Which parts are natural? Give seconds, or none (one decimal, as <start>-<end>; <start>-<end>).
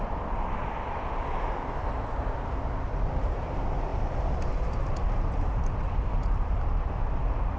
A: 0.0-7.6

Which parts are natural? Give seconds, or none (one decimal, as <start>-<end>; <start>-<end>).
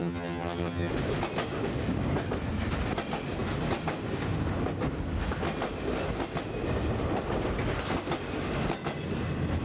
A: 0.9-9.6